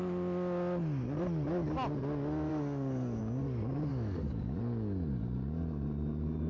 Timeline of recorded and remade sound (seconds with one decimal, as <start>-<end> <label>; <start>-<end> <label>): 0.0-2.5 recorded; 2.5-3.2 remade; 3.2-3.9 recorded; 3.9-4.6 remade; 4.6-6.5 recorded